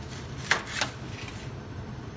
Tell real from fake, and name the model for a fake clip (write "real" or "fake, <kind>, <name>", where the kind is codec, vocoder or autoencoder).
real